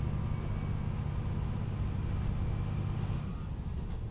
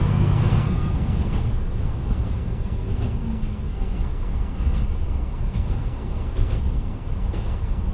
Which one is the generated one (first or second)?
second